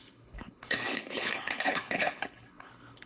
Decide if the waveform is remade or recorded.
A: remade